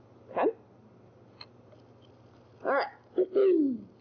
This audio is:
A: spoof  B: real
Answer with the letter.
B